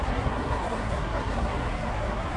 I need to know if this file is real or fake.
fake